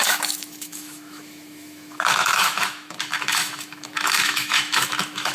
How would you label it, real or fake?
fake